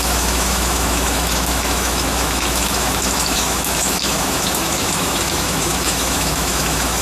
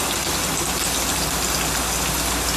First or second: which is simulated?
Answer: first